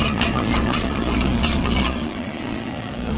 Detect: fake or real fake